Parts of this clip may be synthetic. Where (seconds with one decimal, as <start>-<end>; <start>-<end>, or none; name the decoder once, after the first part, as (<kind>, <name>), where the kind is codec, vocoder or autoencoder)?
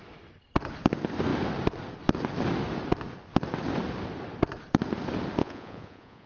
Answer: 5.4-6.3 (vocoder, Vocos)